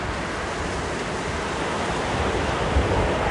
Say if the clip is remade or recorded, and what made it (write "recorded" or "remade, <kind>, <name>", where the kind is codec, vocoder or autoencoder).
recorded